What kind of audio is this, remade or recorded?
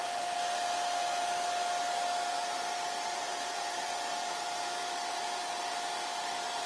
recorded